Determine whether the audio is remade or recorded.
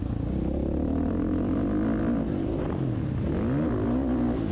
recorded